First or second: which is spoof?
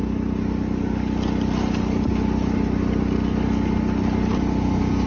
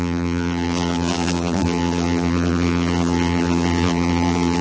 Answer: second